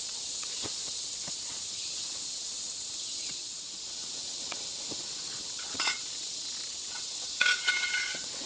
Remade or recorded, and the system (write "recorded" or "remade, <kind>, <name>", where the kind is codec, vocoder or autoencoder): remade, vocoder, WaveNeXt